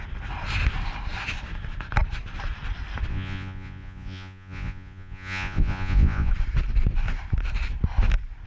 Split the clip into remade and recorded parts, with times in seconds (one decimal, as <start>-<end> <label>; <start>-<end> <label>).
0.0-3.1 recorded; 3.1-6.3 remade; 6.3-8.5 recorded